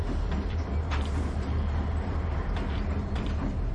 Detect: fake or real fake